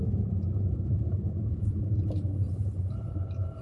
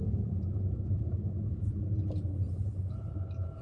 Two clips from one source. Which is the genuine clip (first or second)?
second